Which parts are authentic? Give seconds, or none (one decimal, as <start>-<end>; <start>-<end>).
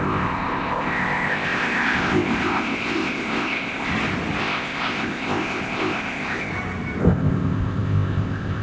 3.9-4.4; 6.5-7.0